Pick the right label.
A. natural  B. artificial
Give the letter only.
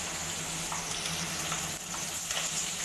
A